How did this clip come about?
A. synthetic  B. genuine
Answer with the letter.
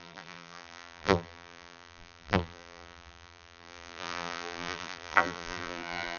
A